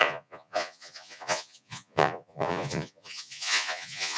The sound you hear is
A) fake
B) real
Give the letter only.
A